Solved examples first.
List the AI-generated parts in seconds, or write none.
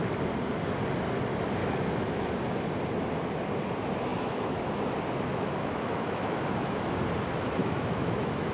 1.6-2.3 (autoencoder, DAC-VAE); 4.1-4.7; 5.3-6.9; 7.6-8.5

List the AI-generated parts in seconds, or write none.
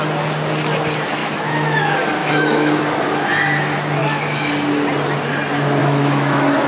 1.2-1.8 (autoencoder, DAC-VAE); 2.2-2.8; 4.0-4.5; 5.8-6.7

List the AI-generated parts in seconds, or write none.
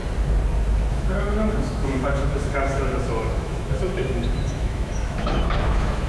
0.9-6.1 (autoencoder, DAC-VAE)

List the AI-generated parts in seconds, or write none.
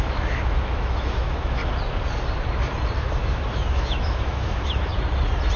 0.0-1.6 (autoencoder, DAC-VAE); 3.0-4.9